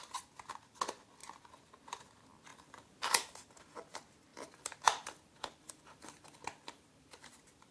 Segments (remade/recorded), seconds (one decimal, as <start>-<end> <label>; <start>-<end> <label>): 0.0-4.3 recorded; 4.3-7.7 remade